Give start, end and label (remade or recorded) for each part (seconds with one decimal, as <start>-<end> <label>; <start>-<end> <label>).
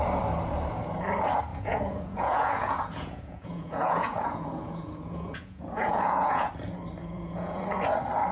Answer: 0.0-1.5 recorded; 1.5-6.5 remade; 6.5-7.0 recorded; 7.0-7.6 remade; 7.6-8.3 recorded